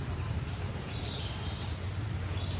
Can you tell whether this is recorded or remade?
remade